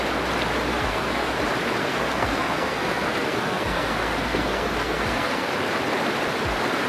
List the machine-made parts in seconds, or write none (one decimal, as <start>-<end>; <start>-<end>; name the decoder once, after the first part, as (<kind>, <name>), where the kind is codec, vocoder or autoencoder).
0.7-1.3 (codec, SNAC); 1.8-5.5